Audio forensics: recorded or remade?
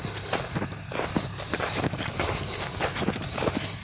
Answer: recorded